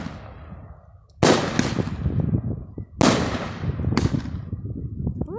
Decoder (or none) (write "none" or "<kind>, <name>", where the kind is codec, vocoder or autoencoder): none